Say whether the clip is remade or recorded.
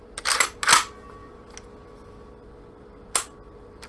recorded